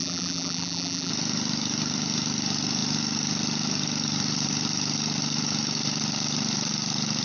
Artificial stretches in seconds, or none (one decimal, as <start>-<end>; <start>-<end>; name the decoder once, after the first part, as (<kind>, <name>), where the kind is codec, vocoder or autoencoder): 0.0-1.1 (vocoder, BigVGAN v2)